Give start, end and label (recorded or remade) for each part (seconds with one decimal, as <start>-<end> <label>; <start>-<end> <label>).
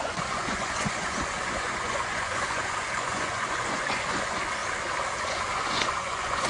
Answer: 0.0-4.6 remade; 4.6-5.2 recorded; 5.2-6.5 remade